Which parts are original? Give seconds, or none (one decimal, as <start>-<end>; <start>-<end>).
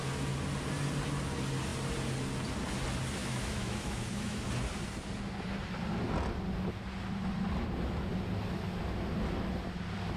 0.0-3.2; 4.4-10.2